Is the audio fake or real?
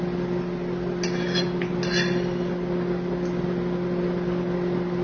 real